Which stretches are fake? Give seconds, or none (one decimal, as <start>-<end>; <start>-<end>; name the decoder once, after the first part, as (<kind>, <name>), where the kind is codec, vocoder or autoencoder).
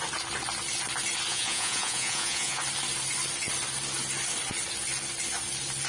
1.3-2.6 (vocoder, Vocos)